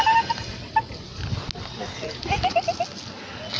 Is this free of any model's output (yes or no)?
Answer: yes